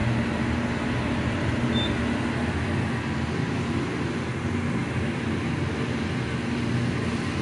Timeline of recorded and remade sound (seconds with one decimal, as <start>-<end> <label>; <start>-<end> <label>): 0.0-7.4 recorded